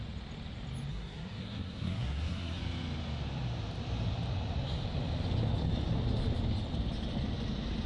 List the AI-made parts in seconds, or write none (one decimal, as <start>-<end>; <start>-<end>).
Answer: 0.9-2.6